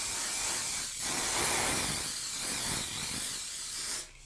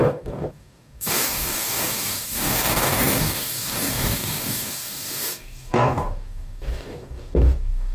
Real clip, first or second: first